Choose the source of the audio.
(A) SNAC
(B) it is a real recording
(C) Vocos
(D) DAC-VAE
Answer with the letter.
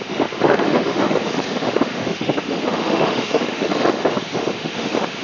D